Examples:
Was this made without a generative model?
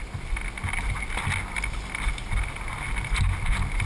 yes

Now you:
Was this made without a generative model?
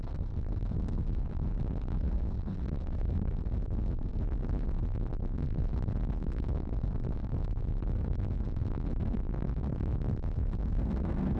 no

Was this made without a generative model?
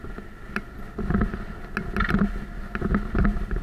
yes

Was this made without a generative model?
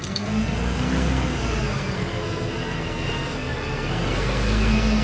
no